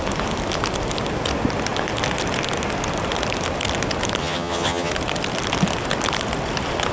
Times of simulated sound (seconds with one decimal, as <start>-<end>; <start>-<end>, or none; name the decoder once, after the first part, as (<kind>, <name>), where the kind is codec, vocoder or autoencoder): 4.2-4.9 (vocoder, HiFi-GAN)